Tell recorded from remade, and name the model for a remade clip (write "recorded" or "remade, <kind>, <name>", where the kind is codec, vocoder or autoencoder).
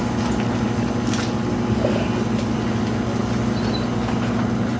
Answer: recorded